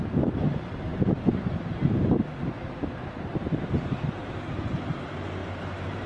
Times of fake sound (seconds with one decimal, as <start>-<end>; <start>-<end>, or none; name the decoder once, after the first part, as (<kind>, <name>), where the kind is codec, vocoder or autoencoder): 4.2-4.7 (vocoder, BigVGAN v2); 5.4-6.1